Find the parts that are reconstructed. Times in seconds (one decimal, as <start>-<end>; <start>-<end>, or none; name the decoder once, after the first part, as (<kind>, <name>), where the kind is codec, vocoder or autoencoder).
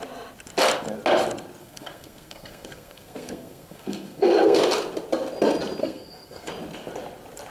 1.6-4.6 (codec, SNAC); 5.8-6.5